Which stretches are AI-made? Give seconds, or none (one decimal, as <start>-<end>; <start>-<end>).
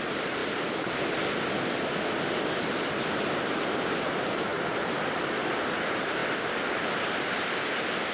none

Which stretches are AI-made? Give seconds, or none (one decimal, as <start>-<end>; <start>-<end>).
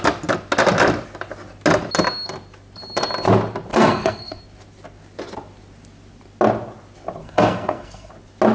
3.7-4.4; 7.2-8.1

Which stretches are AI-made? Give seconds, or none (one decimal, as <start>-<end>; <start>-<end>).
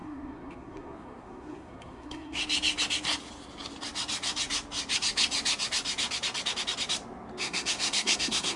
0.0-2.4; 7.4-8.6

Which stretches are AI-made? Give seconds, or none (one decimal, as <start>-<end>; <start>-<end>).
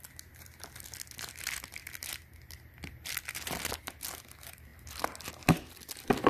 none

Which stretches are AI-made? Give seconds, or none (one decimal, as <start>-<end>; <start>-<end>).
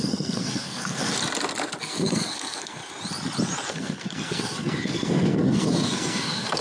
0.0-1.2; 1.8-2.8; 3.7-6.6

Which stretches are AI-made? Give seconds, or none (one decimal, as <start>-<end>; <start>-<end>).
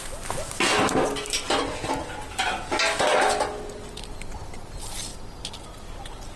none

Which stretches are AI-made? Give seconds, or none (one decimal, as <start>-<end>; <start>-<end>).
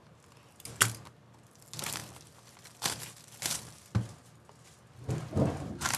none